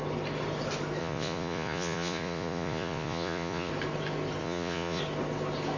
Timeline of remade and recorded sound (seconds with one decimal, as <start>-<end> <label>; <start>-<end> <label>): 0.0-1.0 recorded; 1.0-3.7 remade; 3.7-4.4 recorded; 4.4-5.0 remade; 5.0-5.8 recorded